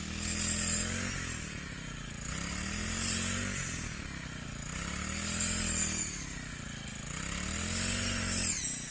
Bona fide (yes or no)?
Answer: yes